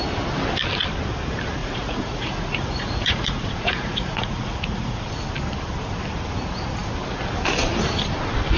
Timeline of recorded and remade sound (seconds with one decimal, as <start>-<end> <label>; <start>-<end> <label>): 0.0-1.6 recorded; 1.6-5.1 remade; 5.1-8.6 recorded